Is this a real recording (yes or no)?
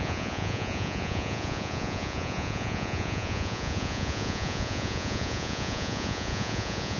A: no